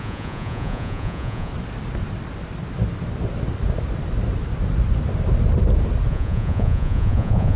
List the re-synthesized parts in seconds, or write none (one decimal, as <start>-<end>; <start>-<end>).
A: 0.0-1.5; 6.1-7.6